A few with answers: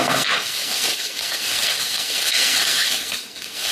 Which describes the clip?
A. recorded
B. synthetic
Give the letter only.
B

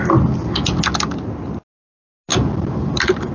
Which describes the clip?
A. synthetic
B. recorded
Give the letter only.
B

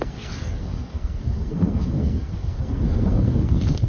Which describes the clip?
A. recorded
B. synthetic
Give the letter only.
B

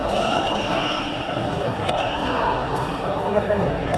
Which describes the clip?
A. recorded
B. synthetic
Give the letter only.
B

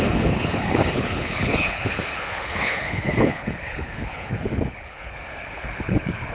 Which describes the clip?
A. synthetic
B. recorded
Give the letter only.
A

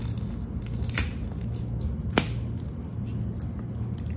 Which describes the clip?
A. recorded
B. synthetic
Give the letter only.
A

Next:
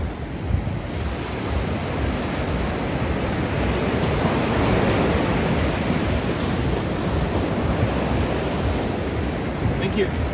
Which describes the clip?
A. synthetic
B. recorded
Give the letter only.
B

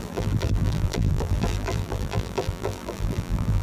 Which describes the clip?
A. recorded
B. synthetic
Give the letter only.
B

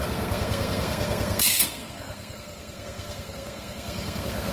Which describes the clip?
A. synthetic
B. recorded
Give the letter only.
A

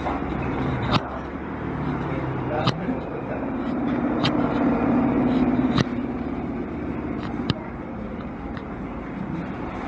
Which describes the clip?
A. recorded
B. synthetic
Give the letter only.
B